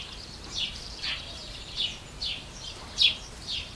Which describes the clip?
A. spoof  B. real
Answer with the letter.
A